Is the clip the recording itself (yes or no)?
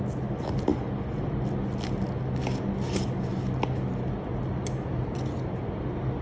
yes